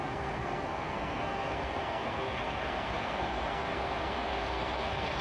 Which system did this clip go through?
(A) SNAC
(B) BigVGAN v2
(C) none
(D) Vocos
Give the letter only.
A